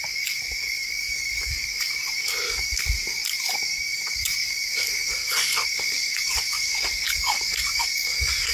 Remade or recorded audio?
remade